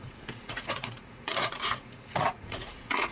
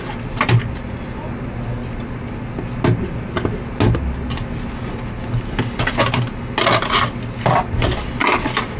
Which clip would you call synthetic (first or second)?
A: first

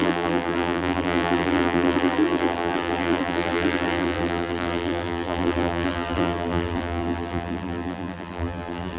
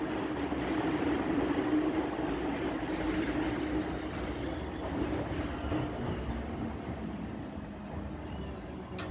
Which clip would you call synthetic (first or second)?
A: first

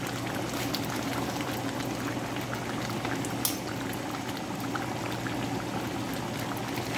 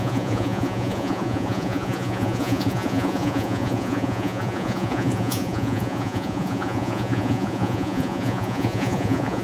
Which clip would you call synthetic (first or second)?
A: second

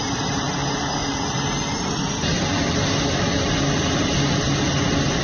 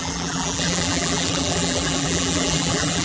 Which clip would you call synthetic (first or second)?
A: second